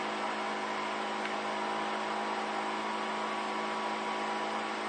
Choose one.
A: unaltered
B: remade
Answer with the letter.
A